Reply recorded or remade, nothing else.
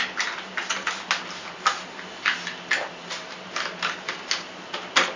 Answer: recorded